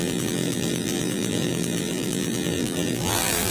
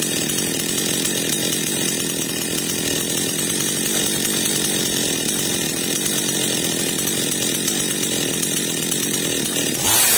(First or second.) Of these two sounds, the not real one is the first